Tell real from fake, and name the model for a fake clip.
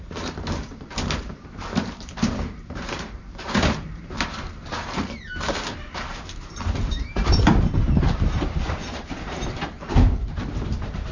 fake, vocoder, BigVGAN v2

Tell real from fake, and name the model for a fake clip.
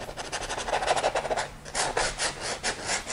real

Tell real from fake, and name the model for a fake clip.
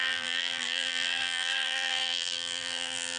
fake, vocoder, BigVGAN v2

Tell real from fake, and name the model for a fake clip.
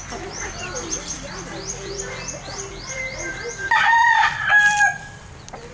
fake, vocoder, BigVGAN v2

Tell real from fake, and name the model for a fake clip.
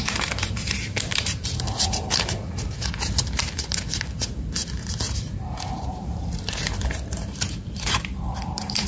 fake, vocoder, BigVGAN v2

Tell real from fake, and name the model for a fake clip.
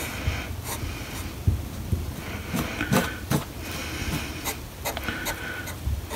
real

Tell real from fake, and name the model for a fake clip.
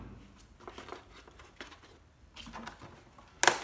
real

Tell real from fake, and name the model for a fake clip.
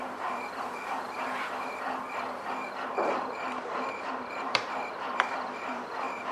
fake, vocoder, BigVGAN v2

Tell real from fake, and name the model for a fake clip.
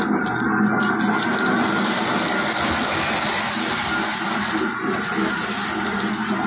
real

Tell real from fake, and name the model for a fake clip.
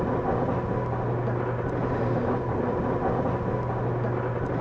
real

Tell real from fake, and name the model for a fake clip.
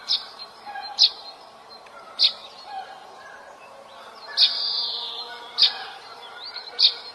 fake, vocoder, BigVGAN v2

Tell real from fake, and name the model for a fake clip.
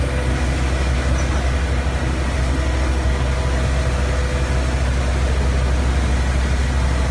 real